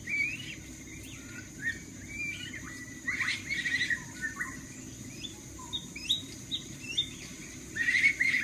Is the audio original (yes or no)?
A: yes